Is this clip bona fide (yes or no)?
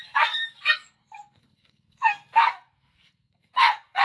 no